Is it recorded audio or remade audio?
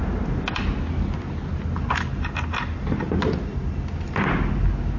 recorded